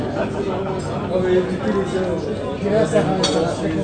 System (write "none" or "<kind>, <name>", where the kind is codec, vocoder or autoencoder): none